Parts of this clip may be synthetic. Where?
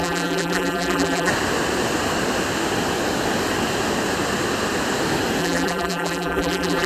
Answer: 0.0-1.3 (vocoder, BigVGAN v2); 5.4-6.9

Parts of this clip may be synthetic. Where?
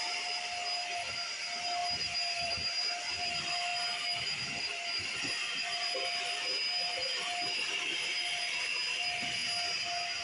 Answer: 0.0-3.7 (vocoder, BigVGAN v2); 4.6-9.4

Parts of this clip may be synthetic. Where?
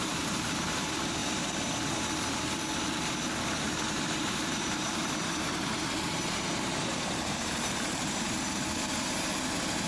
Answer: 0.0-1.2 (vocoder, BigVGAN v2); 4.2-9.9